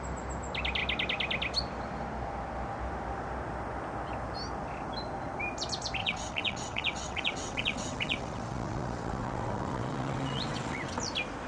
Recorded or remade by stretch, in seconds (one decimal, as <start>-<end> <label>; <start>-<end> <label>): 0.0-6.0 recorded; 6.0-11.0 remade; 11.0-11.5 recorded